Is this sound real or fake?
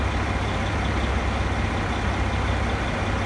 real